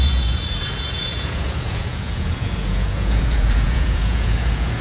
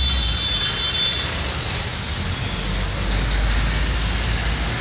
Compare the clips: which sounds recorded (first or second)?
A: second